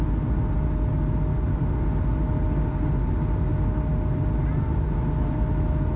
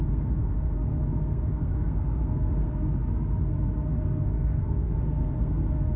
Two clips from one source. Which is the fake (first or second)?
second